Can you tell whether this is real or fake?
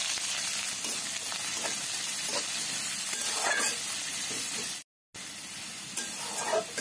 real